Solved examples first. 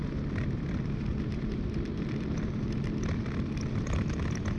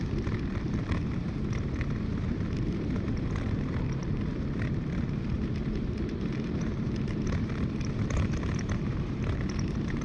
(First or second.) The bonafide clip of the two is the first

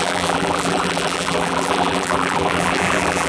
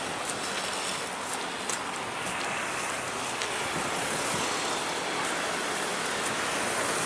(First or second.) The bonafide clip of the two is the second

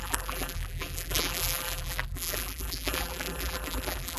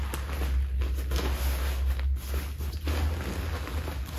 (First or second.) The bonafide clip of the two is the second